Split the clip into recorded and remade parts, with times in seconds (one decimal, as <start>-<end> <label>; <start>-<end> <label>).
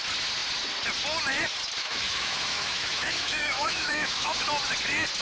0.0-1.8 recorded; 1.8-4.4 remade; 4.4-5.2 recorded